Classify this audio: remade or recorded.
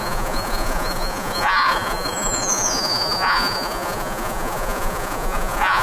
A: remade